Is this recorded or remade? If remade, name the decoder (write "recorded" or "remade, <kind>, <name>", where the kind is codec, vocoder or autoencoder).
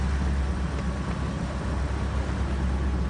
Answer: recorded